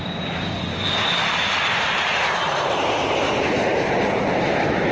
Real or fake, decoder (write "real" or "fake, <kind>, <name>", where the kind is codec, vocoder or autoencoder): fake, vocoder, BigVGAN v2